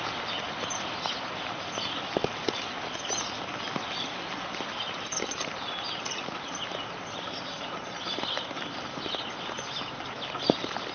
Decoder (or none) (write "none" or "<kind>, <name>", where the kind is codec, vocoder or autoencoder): none